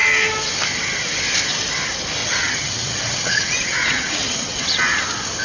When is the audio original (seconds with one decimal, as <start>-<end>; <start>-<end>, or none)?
0.0-2.2; 4.8-5.4